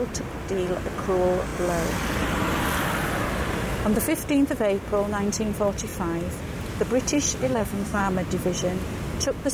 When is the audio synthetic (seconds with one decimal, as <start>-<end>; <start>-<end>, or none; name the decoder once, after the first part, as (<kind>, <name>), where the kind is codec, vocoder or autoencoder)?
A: 7.4-8.0 (codec, SNAC)